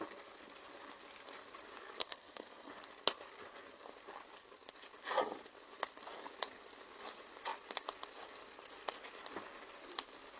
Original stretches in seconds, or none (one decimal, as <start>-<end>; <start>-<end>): 0.0-2.0; 2.7-10.4